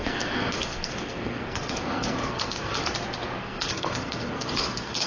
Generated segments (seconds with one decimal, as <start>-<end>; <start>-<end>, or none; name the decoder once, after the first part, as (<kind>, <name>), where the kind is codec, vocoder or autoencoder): 0.0-2.8 (codec, SNAC); 3.4-5.1